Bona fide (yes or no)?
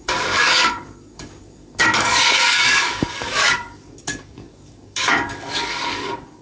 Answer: no